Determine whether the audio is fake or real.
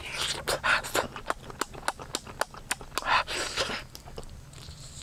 real